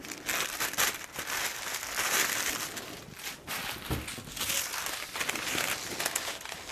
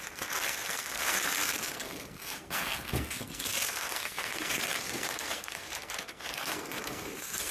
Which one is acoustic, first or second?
first